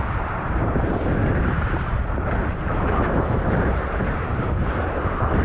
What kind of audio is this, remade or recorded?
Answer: remade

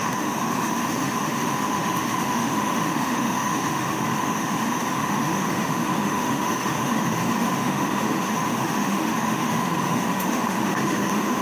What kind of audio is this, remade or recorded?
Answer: remade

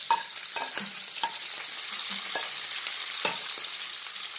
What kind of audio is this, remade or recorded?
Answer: recorded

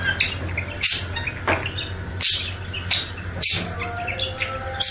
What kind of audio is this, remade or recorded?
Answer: recorded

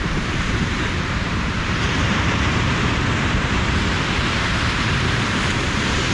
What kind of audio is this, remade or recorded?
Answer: remade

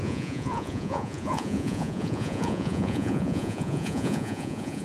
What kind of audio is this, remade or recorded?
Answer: remade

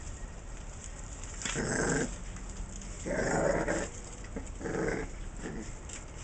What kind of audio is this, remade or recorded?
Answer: recorded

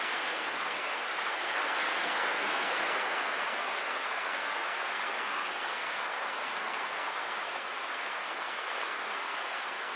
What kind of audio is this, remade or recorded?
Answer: remade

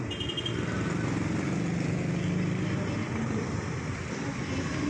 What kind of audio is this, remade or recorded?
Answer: recorded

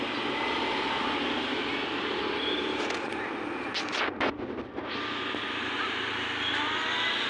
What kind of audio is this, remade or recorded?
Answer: recorded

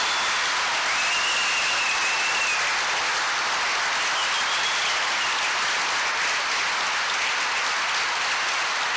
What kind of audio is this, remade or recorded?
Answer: recorded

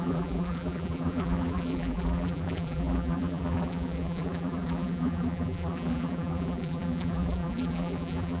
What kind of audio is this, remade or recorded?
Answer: remade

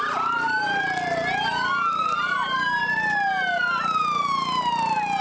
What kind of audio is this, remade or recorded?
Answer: recorded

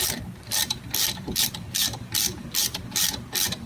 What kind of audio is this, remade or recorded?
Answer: remade